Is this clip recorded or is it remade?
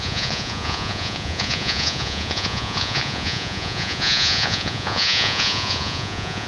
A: remade